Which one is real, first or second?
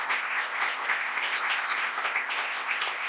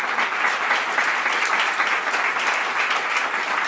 second